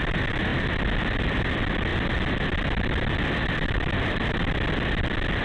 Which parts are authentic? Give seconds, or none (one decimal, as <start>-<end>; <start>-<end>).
0.0-5.4